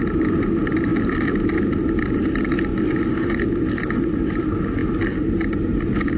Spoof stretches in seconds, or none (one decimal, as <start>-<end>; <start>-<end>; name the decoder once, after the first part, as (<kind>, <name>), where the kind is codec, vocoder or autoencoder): none

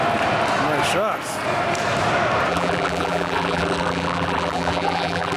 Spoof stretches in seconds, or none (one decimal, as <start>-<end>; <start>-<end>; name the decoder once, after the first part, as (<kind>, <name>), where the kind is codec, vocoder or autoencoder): 2.5-5.4 (vocoder, BigVGAN v2)